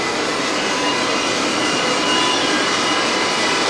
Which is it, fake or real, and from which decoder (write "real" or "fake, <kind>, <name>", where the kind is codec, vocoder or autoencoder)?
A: real